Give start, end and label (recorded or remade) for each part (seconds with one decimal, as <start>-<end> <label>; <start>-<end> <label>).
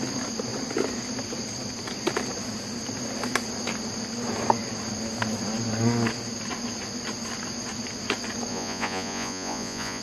0.0-8.5 recorded; 8.5-10.0 remade